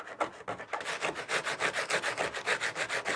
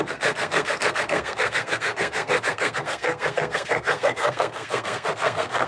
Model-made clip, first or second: second